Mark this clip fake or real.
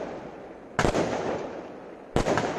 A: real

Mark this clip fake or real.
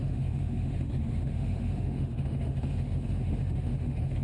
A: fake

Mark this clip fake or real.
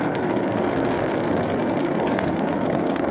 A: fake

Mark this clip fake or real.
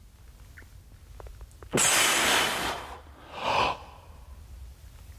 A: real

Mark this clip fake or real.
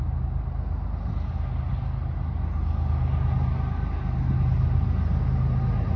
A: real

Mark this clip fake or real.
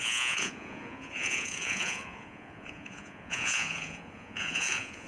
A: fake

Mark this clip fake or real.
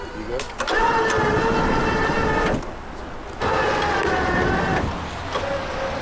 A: real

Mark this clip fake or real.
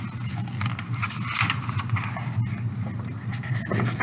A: real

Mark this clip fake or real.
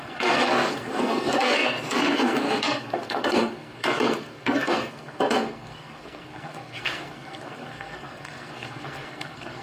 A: fake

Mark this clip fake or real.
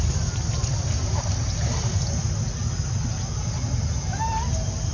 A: real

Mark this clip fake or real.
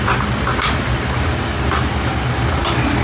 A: real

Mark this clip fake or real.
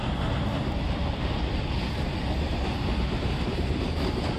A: real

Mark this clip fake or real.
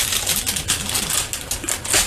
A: real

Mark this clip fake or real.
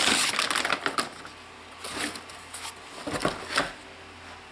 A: real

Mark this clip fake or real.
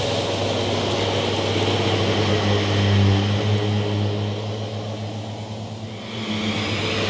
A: real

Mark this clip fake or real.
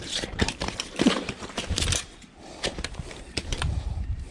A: fake